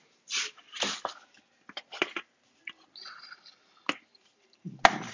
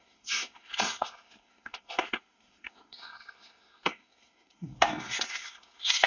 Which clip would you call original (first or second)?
first